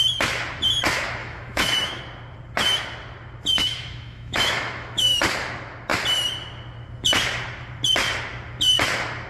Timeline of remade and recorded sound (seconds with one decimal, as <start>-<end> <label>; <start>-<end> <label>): 0.0-1.2 recorded; 1.2-2.0 remade; 2.0-3.5 recorded; 3.5-5.2 remade; 5.2-9.3 recorded